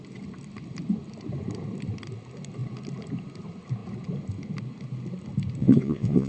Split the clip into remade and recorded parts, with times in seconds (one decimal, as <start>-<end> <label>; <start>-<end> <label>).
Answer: 0.0-5.6 recorded; 5.6-6.3 remade